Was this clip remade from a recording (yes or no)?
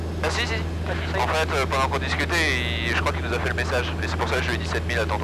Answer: no